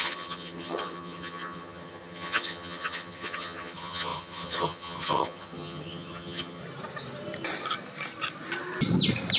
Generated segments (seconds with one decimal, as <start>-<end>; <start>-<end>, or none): 0.0-6.6